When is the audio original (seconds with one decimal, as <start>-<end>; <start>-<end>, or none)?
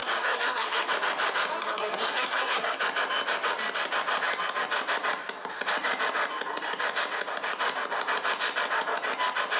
0.9-1.6; 2.8-9.6